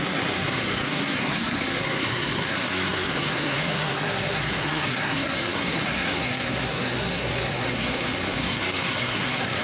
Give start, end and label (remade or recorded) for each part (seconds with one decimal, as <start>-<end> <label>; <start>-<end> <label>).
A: 0.0-9.6 remade